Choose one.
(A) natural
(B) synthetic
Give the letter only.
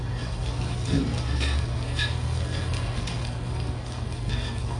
B